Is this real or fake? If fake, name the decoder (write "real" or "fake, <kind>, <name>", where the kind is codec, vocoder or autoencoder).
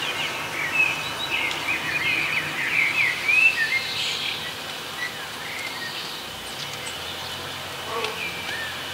real